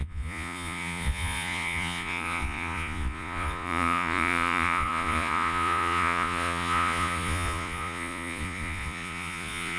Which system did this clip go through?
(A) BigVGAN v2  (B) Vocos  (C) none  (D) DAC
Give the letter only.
B